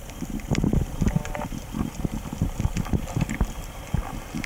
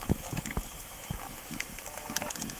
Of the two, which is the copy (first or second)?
second